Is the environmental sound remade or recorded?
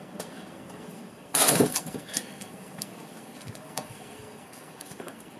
remade